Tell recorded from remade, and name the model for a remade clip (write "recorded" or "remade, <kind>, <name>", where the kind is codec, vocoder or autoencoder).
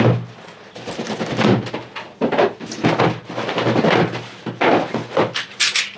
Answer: recorded